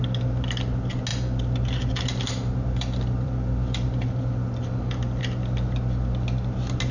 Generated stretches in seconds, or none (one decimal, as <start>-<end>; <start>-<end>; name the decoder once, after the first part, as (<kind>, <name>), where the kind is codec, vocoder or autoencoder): 1.1-5.2 (vocoder, BigVGAN v2)